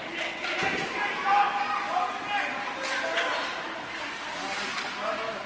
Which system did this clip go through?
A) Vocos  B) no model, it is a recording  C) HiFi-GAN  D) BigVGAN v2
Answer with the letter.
B